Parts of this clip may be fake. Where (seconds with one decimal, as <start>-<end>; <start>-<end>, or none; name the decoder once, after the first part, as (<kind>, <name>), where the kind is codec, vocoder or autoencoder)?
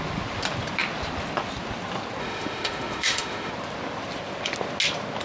2.2-3.5 (autoencoder, DAC-VAE)